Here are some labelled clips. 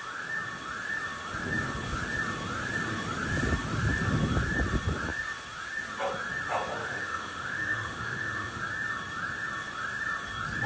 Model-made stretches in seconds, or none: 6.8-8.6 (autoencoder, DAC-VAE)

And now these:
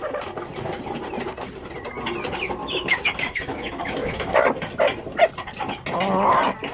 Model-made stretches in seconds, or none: 2.6-4.4 (autoencoder, DAC-VAE)

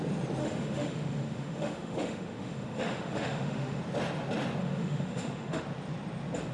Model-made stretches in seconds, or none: 0.4-3.8 (autoencoder, DAC-VAE); 4.6-5.6